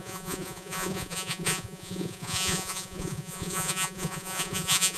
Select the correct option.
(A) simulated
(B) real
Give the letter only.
A